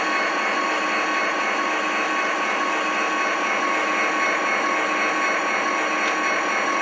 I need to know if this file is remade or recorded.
recorded